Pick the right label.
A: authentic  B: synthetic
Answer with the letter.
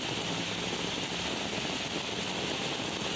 A